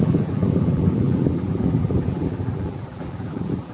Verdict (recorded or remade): remade